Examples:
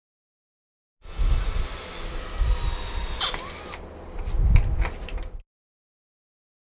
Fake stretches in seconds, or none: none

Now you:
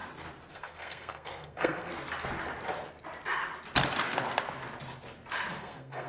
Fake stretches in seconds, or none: 0.5-1.9 (codec, SNAC); 5.6-6.1